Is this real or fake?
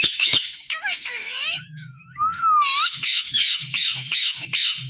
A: fake